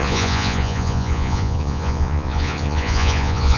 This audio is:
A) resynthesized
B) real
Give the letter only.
A